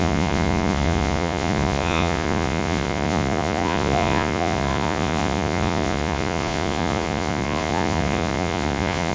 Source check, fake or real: fake